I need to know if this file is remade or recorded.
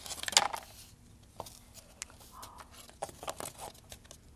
recorded